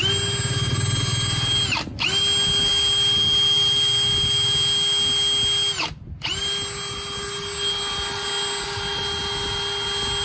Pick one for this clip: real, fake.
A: real